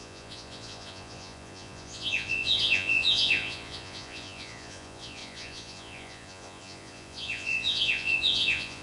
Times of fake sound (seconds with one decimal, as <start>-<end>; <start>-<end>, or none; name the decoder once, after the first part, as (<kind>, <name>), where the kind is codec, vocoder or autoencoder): 0.0-8.8 (vocoder, Vocos)